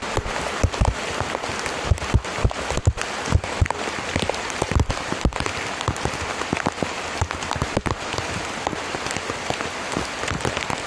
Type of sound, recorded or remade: recorded